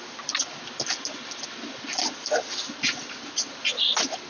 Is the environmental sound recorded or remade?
recorded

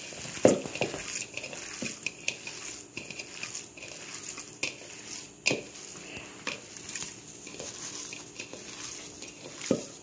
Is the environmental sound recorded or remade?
recorded